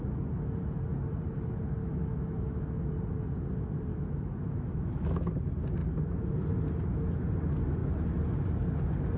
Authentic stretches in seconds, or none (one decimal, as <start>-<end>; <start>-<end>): 0.0-1.8; 2.9-3.9; 5.3-9.2